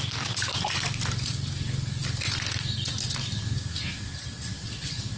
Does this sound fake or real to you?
real